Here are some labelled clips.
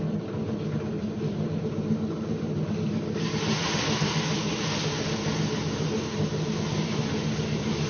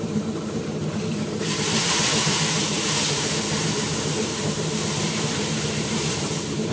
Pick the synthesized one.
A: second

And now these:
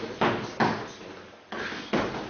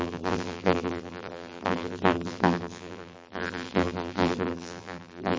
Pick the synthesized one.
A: second